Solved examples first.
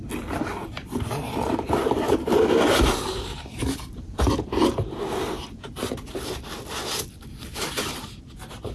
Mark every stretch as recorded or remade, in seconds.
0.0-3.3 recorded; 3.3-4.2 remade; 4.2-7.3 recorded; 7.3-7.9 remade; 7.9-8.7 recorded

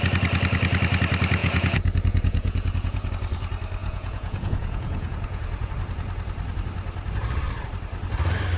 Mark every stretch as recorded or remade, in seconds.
0.0-1.4 recorded; 1.4-3.1 remade; 3.1-3.8 recorded; 3.8-5.7 remade; 5.7-8.6 recorded

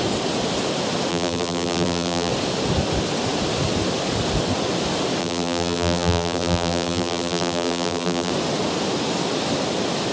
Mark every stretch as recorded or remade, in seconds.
0.0-1.1 recorded; 1.1-2.3 remade; 2.3-5.2 recorded; 5.2-8.3 remade; 8.3-10.1 recorded

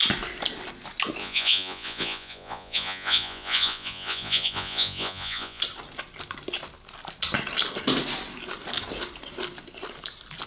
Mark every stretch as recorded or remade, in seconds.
0.0-1.2 recorded; 1.2-5.6 remade; 5.6-10.5 recorded